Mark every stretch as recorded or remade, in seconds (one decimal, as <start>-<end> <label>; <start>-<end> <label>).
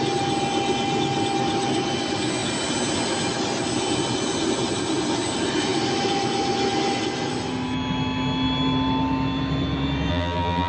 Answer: 0.0-10.1 recorded; 10.1-10.7 remade